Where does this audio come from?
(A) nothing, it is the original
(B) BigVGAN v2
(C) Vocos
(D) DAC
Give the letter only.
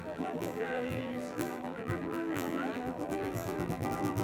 B